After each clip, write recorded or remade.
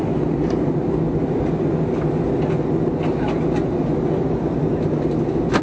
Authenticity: recorded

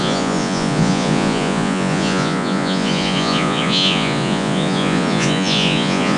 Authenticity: remade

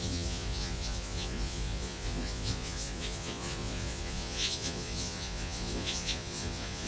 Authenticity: remade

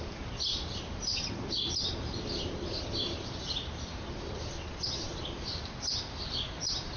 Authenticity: recorded